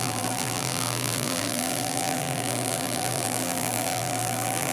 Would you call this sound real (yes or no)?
no